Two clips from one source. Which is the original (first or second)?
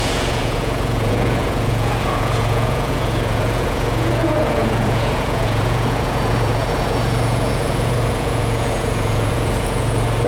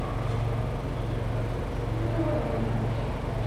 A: second